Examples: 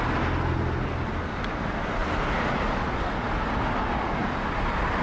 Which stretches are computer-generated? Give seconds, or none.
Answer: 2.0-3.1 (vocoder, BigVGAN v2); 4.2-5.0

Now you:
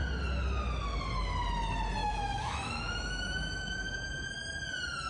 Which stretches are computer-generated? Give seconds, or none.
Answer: 2.0-4.3 (autoencoder, DAC-VAE)

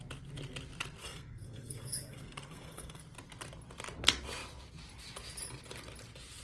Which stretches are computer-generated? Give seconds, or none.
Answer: 1.0-3.0 (codec, SNAC)

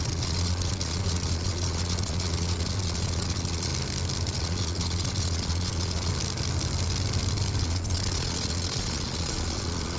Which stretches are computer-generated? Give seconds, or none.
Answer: 0.0-3.7 (vocoder, Vocos); 4.3-6.1; 7.6-10.0

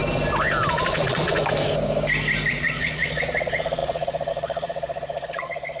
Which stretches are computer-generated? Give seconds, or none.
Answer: 0.7-1.4 (vocoder, Vocos); 2.5-5.8

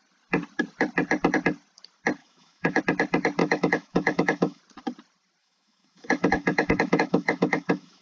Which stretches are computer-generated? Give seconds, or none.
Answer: 2.2-2.8 (autoencoder, DAC-VAE); 3.4-4.6; 5.4-8.0

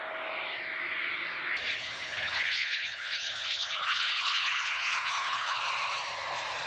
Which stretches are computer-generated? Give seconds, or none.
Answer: 1.8-5.6 (codec, HILCodec)